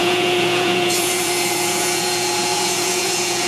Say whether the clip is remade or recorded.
remade